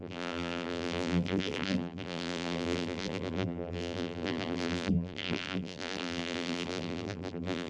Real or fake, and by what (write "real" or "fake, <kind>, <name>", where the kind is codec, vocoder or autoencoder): fake, vocoder, BigVGAN v2